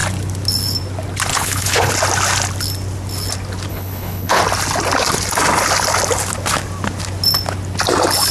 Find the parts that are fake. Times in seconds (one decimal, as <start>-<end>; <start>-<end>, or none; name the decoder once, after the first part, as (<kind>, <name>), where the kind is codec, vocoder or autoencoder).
1.3-1.9 (codec, HILCodec); 3.7-4.4